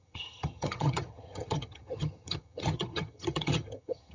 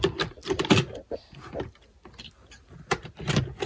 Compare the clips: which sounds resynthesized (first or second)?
first